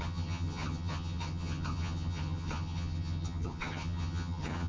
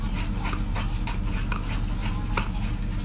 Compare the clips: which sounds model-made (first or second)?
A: first